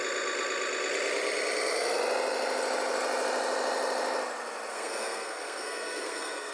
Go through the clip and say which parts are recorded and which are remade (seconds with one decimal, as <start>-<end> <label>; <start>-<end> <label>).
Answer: 0.0-4.7 recorded; 4.7-6.5 remade